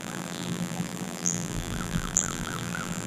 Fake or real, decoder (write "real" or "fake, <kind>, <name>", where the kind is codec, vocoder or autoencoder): fake, vocoder, BigVGAN v2